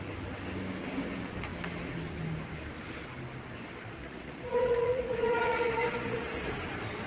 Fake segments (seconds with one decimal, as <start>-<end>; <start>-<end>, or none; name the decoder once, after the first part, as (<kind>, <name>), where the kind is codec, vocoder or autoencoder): 4.0-6.5 (vocoder, Vocos)